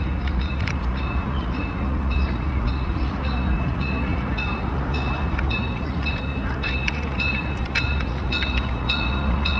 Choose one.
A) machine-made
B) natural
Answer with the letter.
A